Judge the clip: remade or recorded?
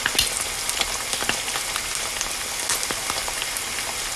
recorded